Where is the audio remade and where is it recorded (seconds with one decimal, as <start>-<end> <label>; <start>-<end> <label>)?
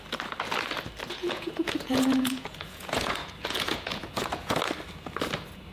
0.0-1.2 recorded; 1.2-4.6 remade; 4.6-5.7 recorded